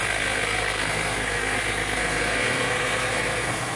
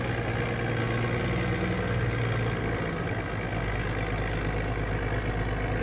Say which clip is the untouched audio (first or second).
second